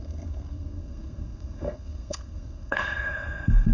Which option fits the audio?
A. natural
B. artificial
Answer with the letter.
B